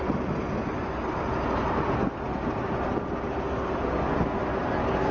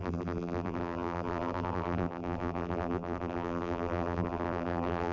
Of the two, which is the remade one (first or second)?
second